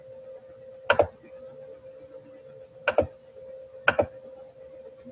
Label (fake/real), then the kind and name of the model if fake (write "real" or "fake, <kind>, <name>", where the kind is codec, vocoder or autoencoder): real